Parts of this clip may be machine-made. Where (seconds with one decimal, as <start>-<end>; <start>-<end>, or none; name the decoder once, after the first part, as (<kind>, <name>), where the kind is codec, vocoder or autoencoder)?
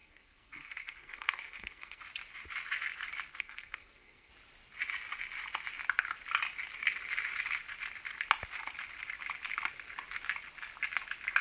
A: 0.0-2.0 (codec, SNAC); 3.3-4.3